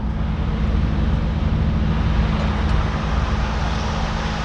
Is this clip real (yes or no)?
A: yes